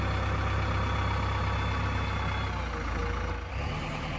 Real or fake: real